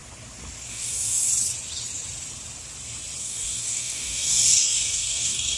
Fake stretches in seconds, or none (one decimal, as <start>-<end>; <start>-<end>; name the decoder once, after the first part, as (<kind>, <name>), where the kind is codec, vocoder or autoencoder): 0.7-1.3 (codec, DAC); 3.2-5.6